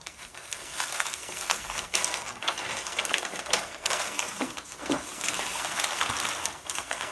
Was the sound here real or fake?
fake